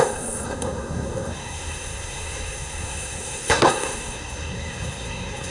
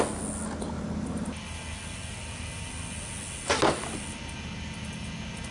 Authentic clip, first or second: second